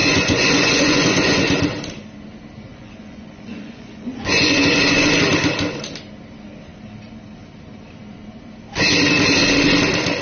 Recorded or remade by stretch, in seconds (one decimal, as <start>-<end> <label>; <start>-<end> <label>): 0.0-1.6 remade; 1.6-2.7 recorded; 2.7-5.1 remade; 5.1-10.2 recorded